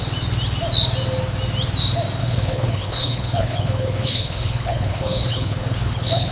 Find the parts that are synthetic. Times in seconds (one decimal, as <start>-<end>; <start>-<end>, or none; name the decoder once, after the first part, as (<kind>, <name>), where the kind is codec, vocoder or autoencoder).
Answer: 2.2-6.3 (codec, HILCodec)